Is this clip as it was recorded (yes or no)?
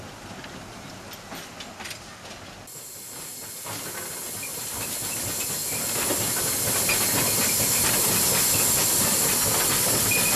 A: yes